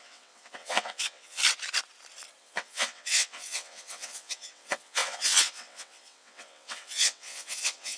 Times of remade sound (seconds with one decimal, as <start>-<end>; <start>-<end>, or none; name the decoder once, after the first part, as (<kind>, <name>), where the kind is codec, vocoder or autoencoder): 0.0-1.4 (vocoder, WaveNeXt); 2.4-8.0